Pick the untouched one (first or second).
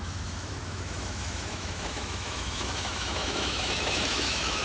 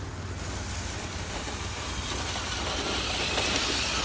second